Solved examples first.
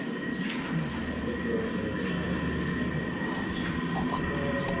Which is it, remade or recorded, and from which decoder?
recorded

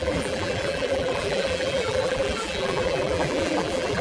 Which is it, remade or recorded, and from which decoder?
remade, vocoder, BigVGAN v2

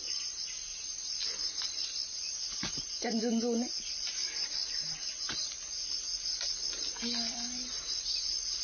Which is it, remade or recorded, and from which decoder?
recorded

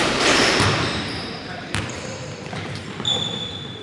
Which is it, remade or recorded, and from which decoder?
remade, vocoder, BigVGAN v2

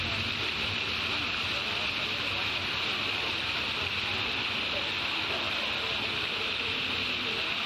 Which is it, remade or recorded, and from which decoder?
recorded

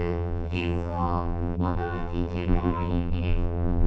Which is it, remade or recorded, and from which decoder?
remade, vocoder, BigVGAN v2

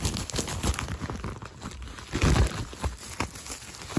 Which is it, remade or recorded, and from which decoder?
recorded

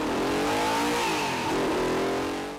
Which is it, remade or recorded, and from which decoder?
recorded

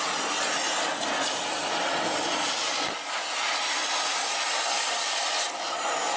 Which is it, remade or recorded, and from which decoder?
recorded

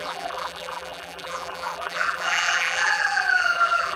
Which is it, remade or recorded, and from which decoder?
remade, vocoder, BigVGAN v2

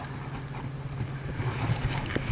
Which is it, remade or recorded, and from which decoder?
recorded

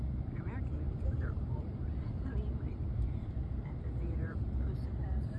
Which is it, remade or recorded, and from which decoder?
remade, vocoder, BigVGAN v2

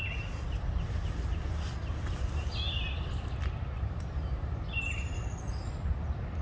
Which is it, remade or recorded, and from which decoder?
recorded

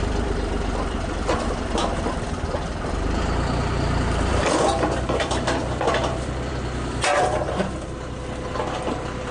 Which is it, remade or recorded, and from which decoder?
remade, vocoder, BigVGAN v2